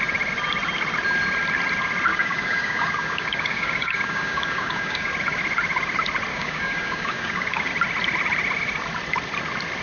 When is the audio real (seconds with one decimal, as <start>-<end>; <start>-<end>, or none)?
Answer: 0.0-2.1; 5.1-6.3; 7.7-9.8